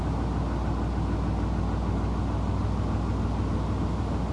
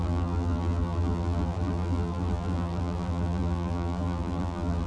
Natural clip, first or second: first